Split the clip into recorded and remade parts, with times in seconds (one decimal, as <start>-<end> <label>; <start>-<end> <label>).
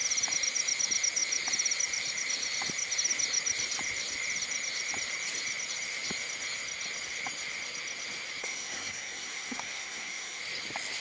0.0-8.4 recorded; 8.4-10.4 remade; 10.4-11.0 recorded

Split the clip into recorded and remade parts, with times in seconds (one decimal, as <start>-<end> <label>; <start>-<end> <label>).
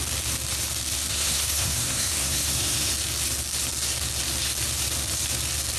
0.0-1.1 recorded; 1.1-2.9 remade; 2.9-5.8 recorded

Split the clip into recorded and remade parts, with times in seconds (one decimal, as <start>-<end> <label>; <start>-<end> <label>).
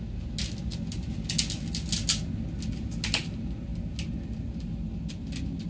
0.0-5.7 recorded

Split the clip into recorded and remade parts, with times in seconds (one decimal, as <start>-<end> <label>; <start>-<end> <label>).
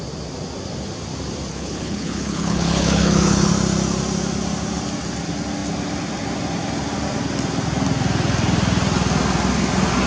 0.0-1.5 recorded; 1.5-3.5 remade; 3.5-10.1 recorded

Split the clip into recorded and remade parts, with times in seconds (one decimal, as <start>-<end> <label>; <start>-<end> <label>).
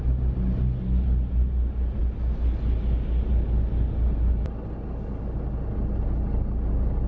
0.0-7.1 recorded